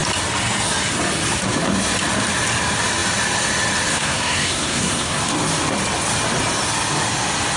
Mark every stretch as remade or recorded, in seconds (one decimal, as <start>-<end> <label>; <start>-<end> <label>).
0.0-3.9 recorded; 3.9-5.2 remade; 5.2-7.6 recorded